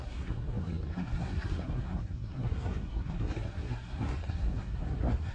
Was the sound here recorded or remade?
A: remade